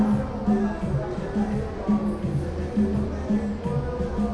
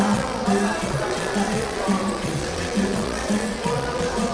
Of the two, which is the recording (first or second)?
first